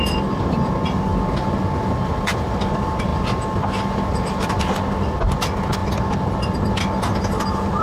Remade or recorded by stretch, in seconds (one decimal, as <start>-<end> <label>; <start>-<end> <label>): 0.0-7.8 recorded